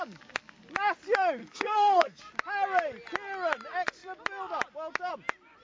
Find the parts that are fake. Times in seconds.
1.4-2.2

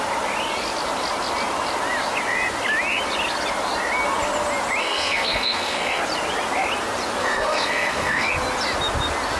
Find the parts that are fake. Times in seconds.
4.8-6.0; 7.2-8.3

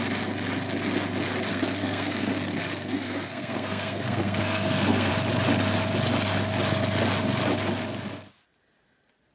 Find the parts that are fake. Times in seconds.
1.5-5.1

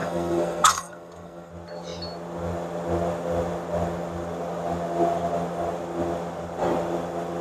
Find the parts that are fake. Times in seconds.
0.0-1.5